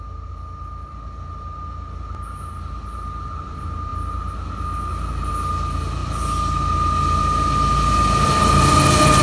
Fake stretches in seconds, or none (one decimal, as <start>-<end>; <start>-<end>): none